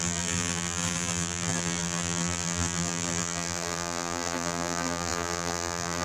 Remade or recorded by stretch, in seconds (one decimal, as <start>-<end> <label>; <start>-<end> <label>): 0.0-6.0 remade